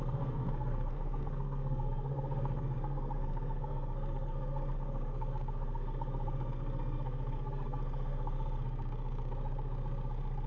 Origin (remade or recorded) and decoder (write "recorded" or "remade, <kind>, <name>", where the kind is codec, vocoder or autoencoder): remade, codec, SNAC